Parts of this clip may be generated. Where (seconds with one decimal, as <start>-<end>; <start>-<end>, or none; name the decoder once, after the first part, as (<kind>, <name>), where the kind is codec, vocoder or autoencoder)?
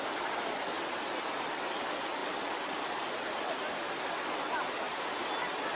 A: none